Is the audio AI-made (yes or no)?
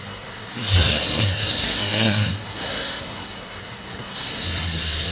yes